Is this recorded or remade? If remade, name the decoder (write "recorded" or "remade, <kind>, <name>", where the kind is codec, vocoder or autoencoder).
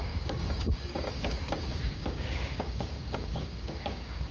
remade, codec, DAC